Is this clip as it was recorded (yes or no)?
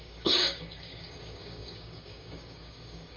no